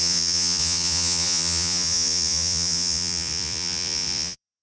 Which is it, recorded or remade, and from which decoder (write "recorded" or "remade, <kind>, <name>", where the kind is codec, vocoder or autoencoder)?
remade, vocoder, Vocos